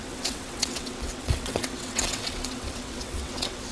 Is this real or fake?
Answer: fake